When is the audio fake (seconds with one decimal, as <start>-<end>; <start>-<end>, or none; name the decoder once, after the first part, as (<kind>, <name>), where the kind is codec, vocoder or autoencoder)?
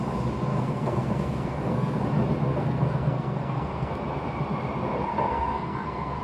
0.5-2.0 (codec, SNAC); 2.5-3.9; 5.1-6.2